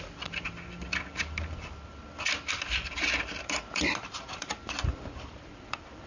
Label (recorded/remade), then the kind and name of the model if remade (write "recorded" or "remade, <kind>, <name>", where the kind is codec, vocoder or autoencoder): remade, vocoder, BigVGAN v2